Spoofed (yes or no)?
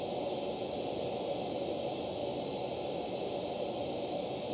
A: no